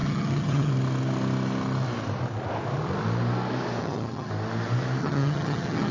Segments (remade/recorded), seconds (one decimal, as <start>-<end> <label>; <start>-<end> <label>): 0.0-0.7 remade; 0.7-3.8 recorded; 3.8-4.3 remade; 4.3-5.0 recorded; 5.0-5.9 remade